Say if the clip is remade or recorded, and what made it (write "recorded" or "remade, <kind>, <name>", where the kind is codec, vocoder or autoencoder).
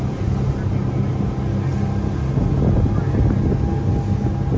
recorded